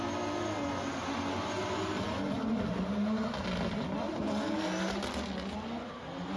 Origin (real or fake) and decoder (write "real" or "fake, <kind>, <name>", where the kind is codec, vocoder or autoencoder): real